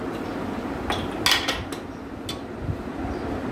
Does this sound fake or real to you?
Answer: real